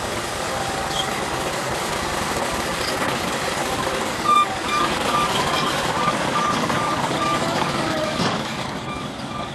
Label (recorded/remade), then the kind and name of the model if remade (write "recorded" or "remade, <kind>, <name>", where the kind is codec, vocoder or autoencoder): remade, codec, DAC